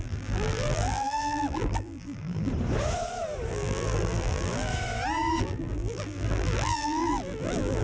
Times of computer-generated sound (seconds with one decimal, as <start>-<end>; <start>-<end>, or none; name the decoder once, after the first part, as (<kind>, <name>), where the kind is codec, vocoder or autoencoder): 0.0-2.5 (vocoder, BigVGAN v2); 3.5-4.7; 5.4-7.8